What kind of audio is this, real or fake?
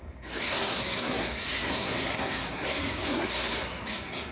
fake